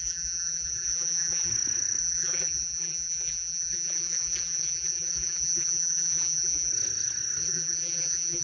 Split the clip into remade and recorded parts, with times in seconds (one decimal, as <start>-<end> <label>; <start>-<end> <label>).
0.0-1.5 remade; 1.5-2.0 recorded; 2.0-6.7 remade; 6.7-7.4 recorded; 7.4-8.4 remade